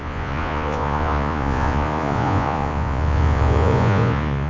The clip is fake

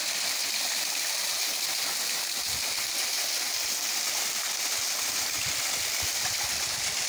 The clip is real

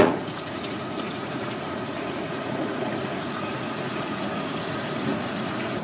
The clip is fake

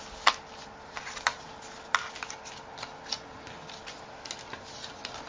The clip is real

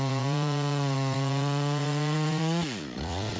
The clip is fake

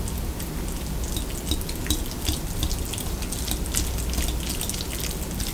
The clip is real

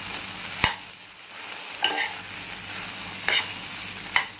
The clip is real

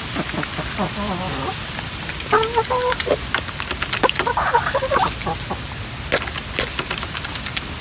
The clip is real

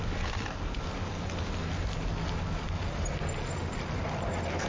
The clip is real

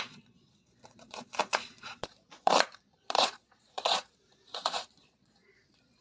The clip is fake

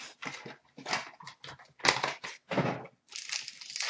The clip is real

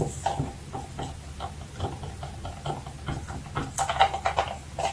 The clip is real